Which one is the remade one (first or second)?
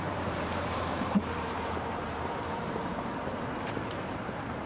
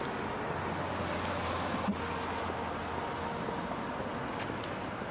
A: first